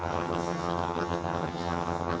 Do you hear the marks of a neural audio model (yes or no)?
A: yes